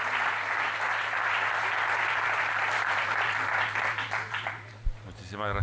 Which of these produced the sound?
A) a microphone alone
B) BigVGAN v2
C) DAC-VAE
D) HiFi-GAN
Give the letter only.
A